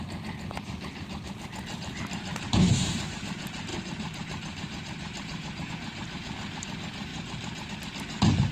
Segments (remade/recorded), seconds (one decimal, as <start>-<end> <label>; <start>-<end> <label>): 0.0-2.3 recorded; 2.3-3.1 remade; 3.1-3.7 recorded; 3.7-5.7 remade; 5.7-7.1 recorded; 7.1-7.7 remade; 7.7-8.5 recorded